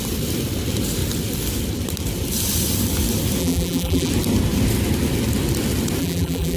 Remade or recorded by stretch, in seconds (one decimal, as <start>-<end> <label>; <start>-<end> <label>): 0.0-3.4 recorded; 3.4-4.1 remade; 4.1-6.0 recorded; 6.0-6.6 remade